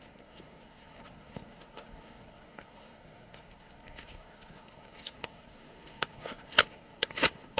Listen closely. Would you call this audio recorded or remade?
remade